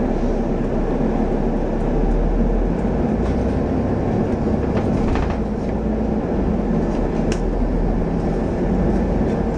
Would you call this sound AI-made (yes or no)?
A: no